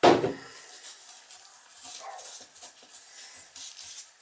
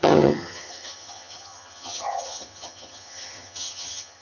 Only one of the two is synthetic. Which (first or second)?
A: second